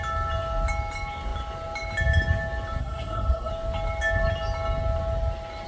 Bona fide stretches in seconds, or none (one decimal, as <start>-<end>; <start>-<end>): 0.0-2.8; 3.5-5.7